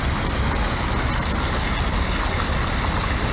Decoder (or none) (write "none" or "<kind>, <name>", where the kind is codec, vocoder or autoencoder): none